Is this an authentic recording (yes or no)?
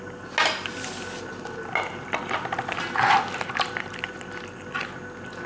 yes